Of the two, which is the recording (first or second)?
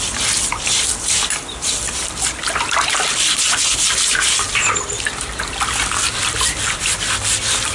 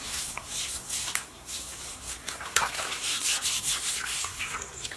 first